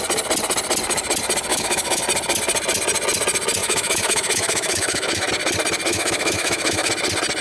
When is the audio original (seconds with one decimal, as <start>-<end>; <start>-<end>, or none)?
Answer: 0.0-1.5; 2.0-3.6; 5.3-5.9; 6.9-7.4